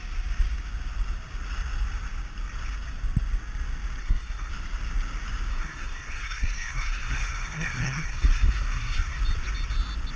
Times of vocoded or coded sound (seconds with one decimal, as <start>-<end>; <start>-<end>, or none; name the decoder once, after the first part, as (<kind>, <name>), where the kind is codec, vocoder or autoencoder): 4.0-4.5 (codec, SNAC); 5.5-9.2